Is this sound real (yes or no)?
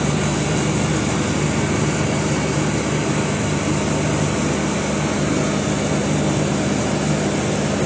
yes